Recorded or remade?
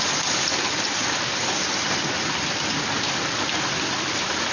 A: recorded